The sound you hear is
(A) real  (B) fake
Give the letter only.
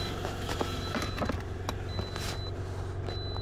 A